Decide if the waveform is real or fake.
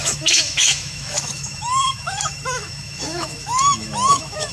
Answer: fake